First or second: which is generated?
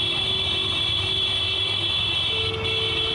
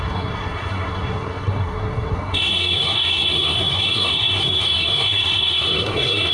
second